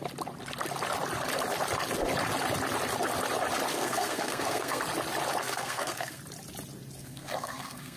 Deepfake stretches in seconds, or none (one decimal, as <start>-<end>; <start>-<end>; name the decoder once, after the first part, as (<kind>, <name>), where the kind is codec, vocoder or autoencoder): 3.7-4.8 (codec, SNAC); 5.4-6.2; 7.0-8.0